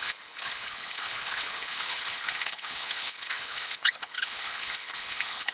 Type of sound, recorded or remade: remade